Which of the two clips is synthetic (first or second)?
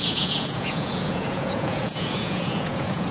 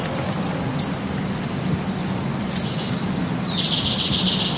first